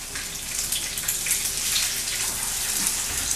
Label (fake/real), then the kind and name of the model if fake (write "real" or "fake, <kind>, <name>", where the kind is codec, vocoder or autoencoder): real